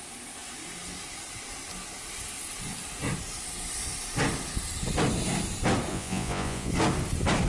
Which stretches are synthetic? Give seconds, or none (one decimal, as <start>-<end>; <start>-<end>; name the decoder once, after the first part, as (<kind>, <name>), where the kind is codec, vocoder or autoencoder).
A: 5.9-6.7 (vocoder, Vocos)